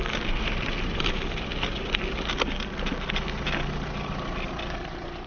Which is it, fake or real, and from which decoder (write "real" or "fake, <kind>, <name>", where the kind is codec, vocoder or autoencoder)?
real